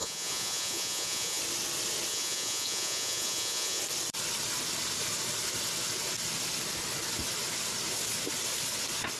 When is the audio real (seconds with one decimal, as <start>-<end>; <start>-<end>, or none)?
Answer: 1.4-2.1; 3.8-9.2